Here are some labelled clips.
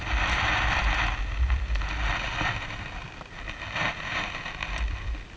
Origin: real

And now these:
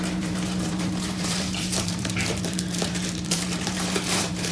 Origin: fake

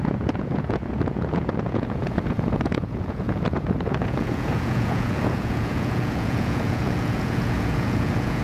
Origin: fake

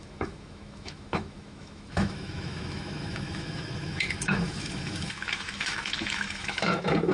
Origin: fake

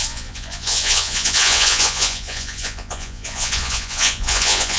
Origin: fake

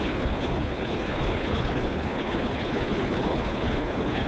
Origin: fake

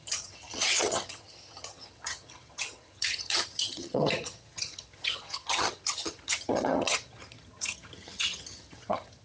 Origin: fake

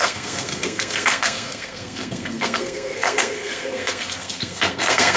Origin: fake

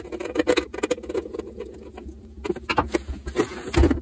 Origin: real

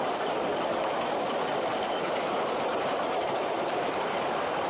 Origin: real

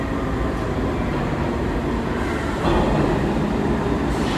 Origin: real